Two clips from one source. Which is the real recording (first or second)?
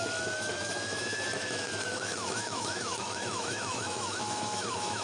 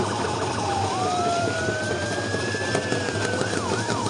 second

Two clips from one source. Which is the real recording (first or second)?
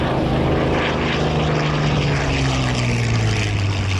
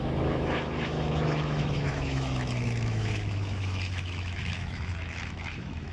first